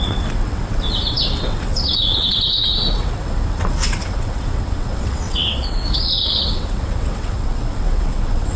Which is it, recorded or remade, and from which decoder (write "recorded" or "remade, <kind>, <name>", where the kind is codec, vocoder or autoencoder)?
remade, vocoder, WaveNeXt